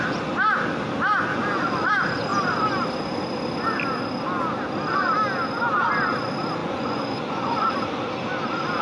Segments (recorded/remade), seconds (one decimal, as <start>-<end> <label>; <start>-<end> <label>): 0.0-1.3 recorded; 1.3-1.9 remade; 1.9-6.6 recorded; 6.6-7.7 remade; 7.7-8.8 recorded